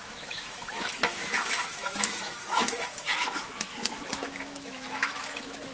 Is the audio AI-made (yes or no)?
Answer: yes